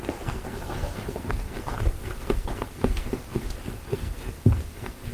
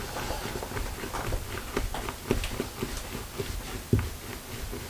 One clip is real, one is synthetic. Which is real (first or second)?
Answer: second